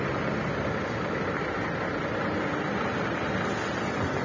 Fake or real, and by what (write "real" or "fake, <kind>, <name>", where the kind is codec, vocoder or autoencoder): real